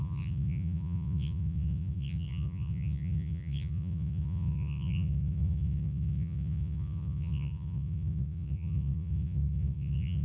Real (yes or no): no